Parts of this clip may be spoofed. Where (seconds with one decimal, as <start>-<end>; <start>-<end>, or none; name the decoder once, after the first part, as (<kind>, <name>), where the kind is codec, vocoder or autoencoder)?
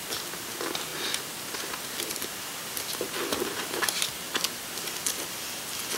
none